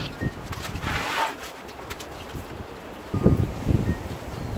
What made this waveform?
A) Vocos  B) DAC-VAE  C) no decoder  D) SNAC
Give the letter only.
C